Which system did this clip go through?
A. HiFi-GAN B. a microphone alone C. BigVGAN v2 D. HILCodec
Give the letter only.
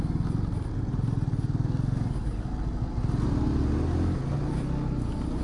B